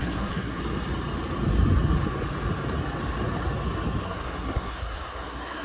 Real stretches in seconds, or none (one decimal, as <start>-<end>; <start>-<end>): 0.6-4.0